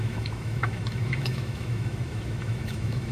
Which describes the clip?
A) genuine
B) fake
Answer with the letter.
B